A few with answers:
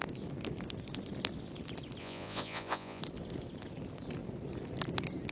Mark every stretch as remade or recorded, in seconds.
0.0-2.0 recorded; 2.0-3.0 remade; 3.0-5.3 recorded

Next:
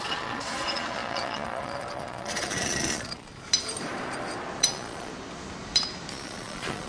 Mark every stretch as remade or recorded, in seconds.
0.0-3.3 remade; 3.3-4.6 recorded; 4.6-5.1 remade; 5.1-6.1 recorded; 6.1-6.9 remade

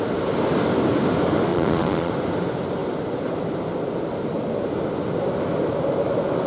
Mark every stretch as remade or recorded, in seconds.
0.0-1.5 recorded; 1.5-2.1 remade; 2.1-6.5 recorded

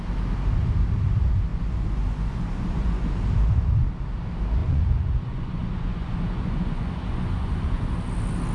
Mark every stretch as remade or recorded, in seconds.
0.0-1.5 recorded; 1.5-3.0 remade; 3.0-4.6 recorded; 4.6-7.9 remade; 7.9-8.5 recorded

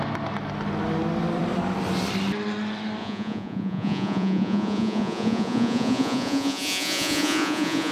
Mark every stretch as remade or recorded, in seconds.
0.0-3.0 recorded; 3.0-7.9 remade

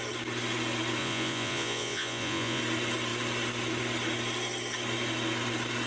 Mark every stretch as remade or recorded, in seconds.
0.0-1.0 recorded; 1.0-2.6 remade; 2.6-5.9 recorded

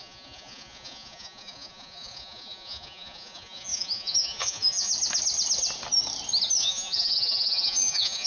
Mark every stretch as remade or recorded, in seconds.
0.0-4.9 remade; 4.9-6.6 recorded; 6.6-8.3 remade

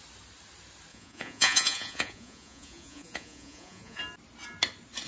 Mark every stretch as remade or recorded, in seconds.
0.0-0.9 recorded; 0.9-4.0 remade; 4.0-5.1 recorded